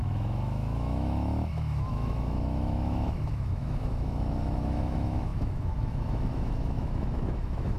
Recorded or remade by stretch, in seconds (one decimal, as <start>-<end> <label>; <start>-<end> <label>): 0.0-7.8 remade